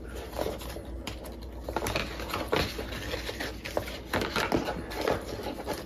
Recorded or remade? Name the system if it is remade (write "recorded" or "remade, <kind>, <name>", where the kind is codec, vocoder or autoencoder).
recorded